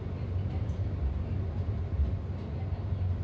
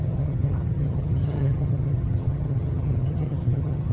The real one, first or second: first